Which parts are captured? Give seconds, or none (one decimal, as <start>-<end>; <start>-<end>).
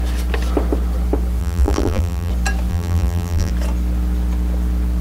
0.0-1.4; 2.3-2.7; 3.5-5.0